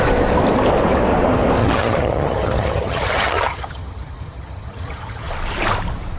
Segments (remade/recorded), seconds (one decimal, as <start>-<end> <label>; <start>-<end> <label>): 0.0-1.6 recorded; 1.6-5.3 remade; 5.3-6.2 recorded